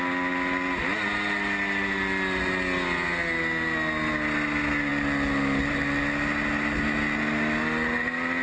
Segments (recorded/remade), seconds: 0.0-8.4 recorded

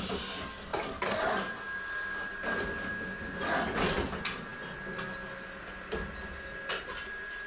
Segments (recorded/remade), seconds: 0.0-7.5 recorded

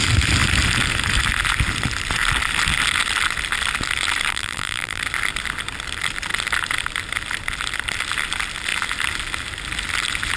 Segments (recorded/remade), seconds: 0.0-4.3 recorded; 4.3-5.0 remade; 5.0-10.4 recorded

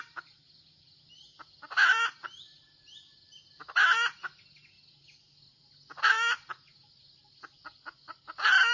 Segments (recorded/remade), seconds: 0.0-8.7 recorded

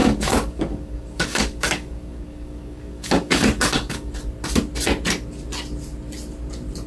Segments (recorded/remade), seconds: 0.0-4.1 remade; 4.1-6.9 recorded

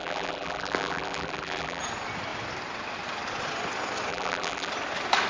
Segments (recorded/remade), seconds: 0.0-1.8 remade; 1.8-4.1 recorded; 4.1-4.7 remade; 4.7-5.3 recorded